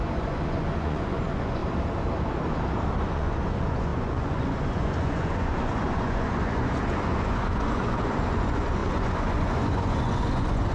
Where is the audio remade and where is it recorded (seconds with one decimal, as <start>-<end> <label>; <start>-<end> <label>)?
0.0-1.6 remade; 1.6-3.0 recorded; 3.0-10.7 remade